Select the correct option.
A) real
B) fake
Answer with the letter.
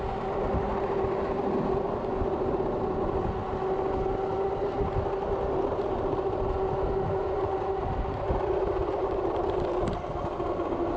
A